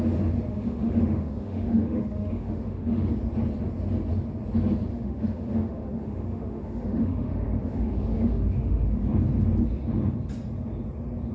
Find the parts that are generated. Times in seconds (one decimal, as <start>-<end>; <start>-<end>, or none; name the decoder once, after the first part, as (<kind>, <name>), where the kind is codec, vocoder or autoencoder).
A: 0.5-3.1 (autoencoder, DAC-VAE); 4.9-9.0